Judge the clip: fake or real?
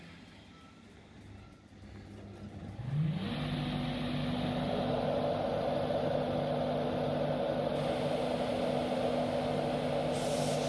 real